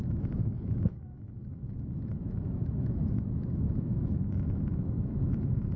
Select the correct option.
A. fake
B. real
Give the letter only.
A